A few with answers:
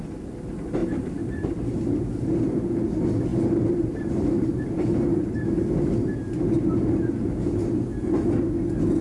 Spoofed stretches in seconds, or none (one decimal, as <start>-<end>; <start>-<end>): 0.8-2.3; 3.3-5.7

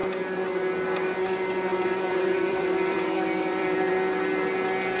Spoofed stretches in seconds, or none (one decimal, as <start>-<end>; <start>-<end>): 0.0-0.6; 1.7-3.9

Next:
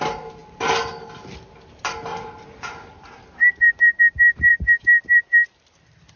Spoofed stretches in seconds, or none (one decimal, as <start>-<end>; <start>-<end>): 2.1-4.0; 4.5-5.5

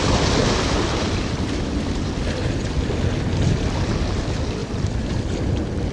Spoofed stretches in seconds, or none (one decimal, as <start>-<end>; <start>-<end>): 0.4-2.9; 4.6-5.9

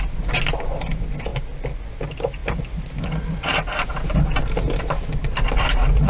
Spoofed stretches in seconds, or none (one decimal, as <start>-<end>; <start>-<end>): 1.3-1.8